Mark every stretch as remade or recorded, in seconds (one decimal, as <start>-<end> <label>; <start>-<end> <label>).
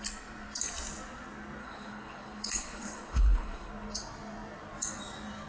0.0-1.6 recorded; 1.6-3.7 remade; 3.7-5.5 recorded